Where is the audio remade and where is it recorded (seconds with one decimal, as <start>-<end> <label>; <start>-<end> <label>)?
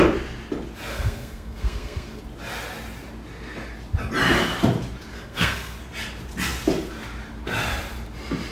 0.0-0.9 recorded; 0.9-2.2 remade; 2.2-5.1 recorded; 5.1-5.8 remade; 5.8-8.5 recorded